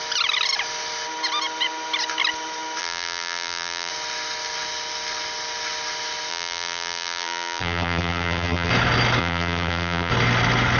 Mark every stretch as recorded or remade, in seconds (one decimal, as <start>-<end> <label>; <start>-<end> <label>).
0.0-2.8 recorded; 2.8-3.9 remade; 3.9-6.3 recorded; 6.3-8.7 remade; 8.7-9.2 recorded; 9.2-10.1 remade; 10.1-10.8 recorded